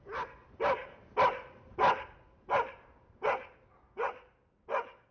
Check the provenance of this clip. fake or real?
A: real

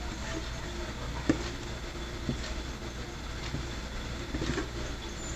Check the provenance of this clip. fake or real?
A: real